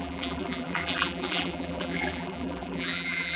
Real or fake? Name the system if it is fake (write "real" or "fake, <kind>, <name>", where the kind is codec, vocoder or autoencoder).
fake, vocoder, BigVGAN v2